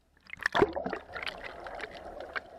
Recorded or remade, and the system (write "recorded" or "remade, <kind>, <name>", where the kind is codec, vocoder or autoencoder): recorded